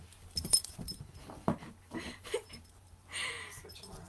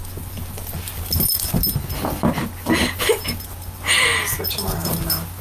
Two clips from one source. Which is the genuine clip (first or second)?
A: second